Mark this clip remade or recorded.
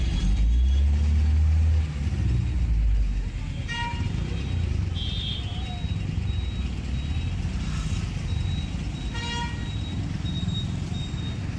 recorded